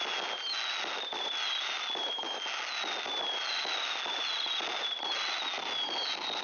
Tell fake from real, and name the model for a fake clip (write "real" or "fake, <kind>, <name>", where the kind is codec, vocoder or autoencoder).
real